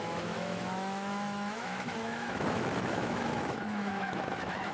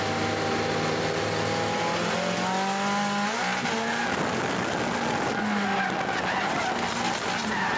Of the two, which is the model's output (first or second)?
first